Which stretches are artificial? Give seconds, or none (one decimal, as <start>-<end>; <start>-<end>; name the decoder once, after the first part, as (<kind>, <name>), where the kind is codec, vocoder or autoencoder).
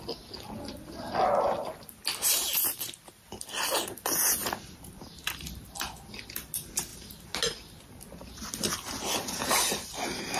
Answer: 4.4-5.1 (vocoder, BigVGAN v2)